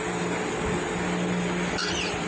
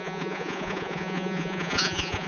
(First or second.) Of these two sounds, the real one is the first